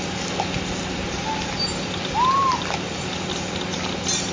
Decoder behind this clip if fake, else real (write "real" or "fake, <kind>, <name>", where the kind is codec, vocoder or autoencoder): real